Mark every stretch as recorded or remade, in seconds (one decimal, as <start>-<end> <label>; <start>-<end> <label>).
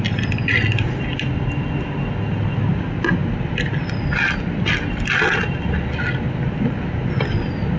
0.0-7.8 recorded